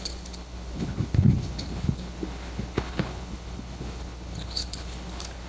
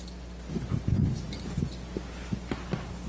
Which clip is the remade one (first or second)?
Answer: first